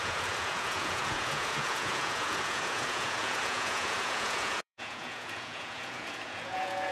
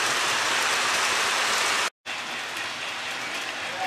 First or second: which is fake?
first